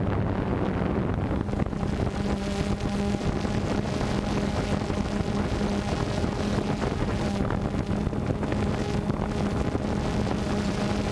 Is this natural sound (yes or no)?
yes